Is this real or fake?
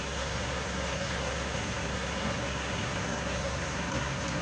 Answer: fake